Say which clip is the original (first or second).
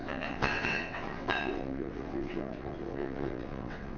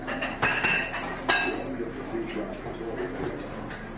second